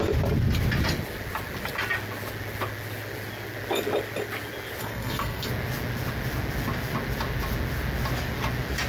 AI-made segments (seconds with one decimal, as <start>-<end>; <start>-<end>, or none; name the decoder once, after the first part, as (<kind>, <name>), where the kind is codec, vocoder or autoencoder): 4.8-5.5 (codec, SNAC)